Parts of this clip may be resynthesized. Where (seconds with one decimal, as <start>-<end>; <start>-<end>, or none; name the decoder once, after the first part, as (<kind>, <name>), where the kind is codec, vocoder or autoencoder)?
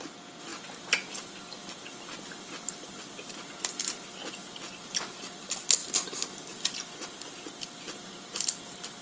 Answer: none